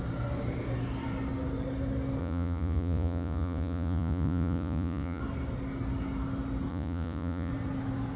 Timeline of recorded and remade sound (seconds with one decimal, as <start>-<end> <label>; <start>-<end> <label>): 0.0-2.2 recorded; 2.2-5.2 remade; 5.2-6.7 recorded; 6.7-7.5 remade; 7.5-8.2 recorded